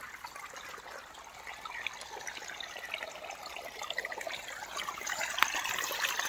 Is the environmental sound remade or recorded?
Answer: recorded